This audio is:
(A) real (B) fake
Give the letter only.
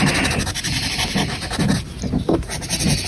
A